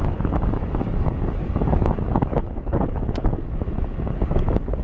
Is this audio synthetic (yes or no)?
yes